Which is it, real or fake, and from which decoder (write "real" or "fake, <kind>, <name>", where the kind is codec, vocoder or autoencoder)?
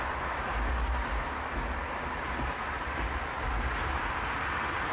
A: real